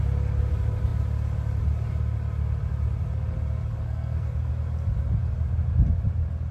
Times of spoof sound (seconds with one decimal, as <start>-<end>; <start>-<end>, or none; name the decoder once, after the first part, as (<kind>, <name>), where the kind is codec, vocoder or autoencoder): 3.8-4.5 (codec, SNAC)